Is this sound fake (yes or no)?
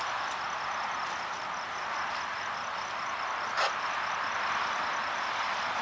no